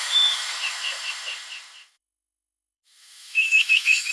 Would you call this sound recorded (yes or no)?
no